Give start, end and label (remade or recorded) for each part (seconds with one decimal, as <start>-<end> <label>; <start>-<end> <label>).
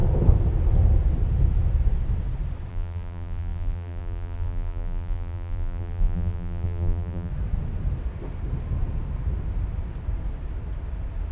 0.0-2.7 recorded; 2.7-7.3 remade; 7.3-11.3 recorded